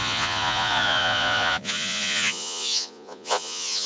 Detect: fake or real fake